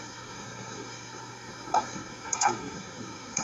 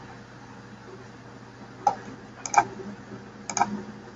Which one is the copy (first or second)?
first